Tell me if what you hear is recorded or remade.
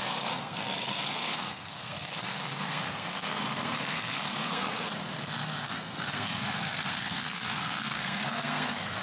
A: remade